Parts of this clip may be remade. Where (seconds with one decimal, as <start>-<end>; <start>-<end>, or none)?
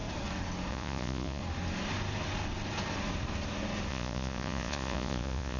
0.7-1.4; 3.9-5.6